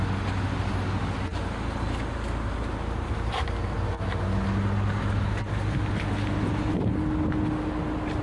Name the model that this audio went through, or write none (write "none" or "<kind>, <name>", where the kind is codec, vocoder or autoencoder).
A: none